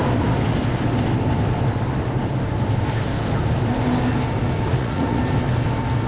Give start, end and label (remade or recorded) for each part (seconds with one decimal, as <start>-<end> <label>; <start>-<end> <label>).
0.0-4.7 recorded; 4.7-5.2 remade; 5.2-6.1 recorded